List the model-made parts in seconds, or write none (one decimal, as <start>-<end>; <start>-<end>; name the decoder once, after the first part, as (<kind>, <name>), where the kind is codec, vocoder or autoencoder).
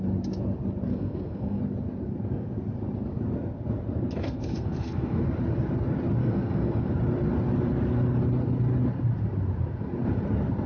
0.9-1.6 (codec, SNAC); 4.2-5.2; 6.2-6.9